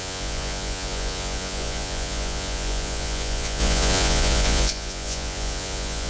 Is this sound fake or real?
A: fake